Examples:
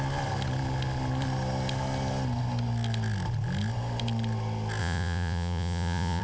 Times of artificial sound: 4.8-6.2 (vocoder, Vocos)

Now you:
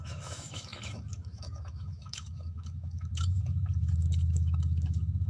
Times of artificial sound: 0.0-5.3 (autoencoder, DAC-VAE)

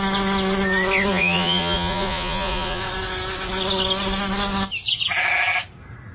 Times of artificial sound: 1.1-2.8 (vocoder, Vocos)

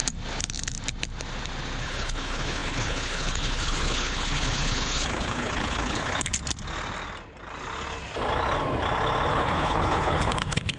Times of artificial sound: 1.8-6.3 (codec, HILCodec); 9.3-10.8